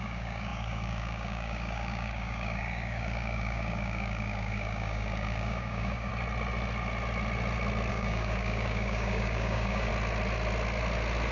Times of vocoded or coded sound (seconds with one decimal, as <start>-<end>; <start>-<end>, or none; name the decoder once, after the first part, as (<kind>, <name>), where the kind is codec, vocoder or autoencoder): 0.0-6.1 (codec, DAC); 7.9-9.9